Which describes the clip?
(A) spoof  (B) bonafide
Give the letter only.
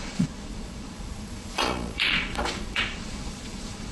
A